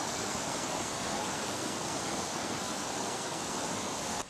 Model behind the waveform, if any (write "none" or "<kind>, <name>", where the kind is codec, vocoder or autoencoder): codec, SNAC